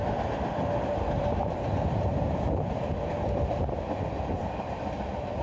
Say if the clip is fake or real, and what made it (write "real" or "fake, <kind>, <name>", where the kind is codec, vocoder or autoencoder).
fake, vocoder, BigVGAN v2